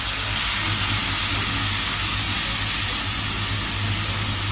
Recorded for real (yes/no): yes